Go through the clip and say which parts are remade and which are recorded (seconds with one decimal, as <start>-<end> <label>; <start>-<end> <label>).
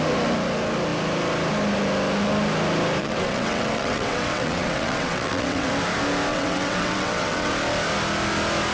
0.0-3.0 recorded; 3.0-5.7 remade; 5.7-6.3 recorded; 6.3-7.5 remade; 7.5-8.7 recorded